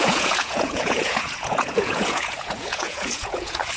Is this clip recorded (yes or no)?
no